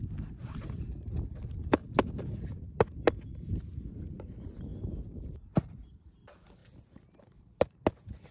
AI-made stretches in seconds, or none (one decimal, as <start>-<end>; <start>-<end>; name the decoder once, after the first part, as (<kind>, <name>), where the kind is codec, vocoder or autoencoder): none